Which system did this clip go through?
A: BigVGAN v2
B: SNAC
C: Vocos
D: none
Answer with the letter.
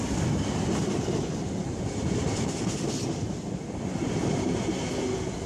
D